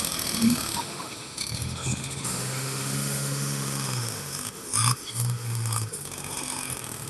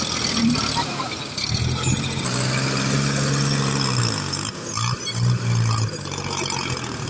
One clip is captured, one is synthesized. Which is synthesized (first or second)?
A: first